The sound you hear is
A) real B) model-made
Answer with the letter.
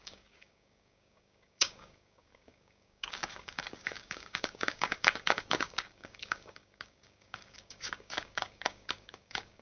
B